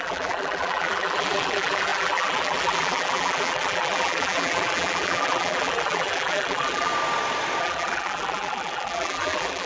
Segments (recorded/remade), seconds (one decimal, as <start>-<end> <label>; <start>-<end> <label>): 0.0-6.9 remade; 6.9-7.6 recorded; 7.6-9.7 remade